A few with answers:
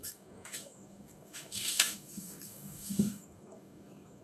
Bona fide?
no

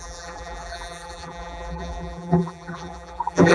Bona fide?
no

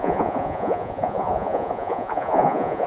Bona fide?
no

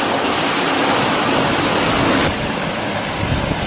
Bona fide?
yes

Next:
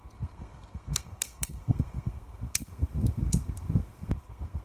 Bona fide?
no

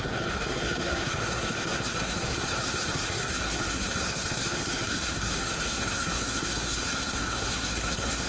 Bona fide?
no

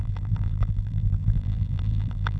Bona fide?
no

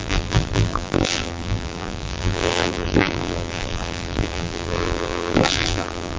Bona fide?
no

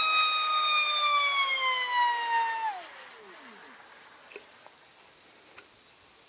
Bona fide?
yes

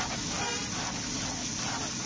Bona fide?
yes